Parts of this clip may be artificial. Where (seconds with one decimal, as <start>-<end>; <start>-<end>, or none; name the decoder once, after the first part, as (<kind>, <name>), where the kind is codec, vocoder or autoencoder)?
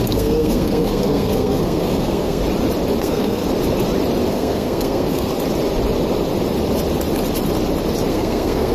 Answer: 0.0-2.4 (codec, SNAC); 3.0-3.4; 4.3-5.3; 8.1-8.7